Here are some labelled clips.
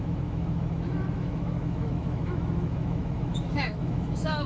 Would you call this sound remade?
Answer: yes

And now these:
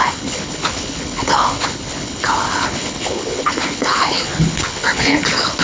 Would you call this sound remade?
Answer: yes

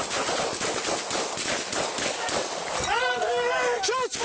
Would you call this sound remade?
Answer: no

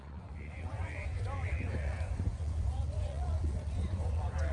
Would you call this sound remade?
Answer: yes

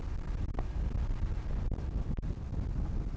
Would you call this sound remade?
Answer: no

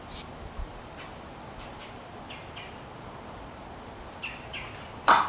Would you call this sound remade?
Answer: no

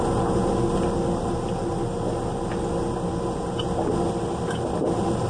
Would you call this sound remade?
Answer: no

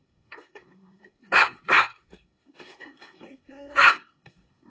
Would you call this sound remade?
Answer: yes